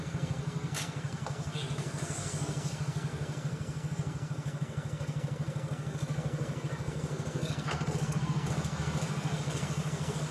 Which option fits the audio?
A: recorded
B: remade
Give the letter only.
B